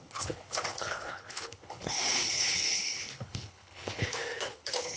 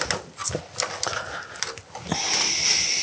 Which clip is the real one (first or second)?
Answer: second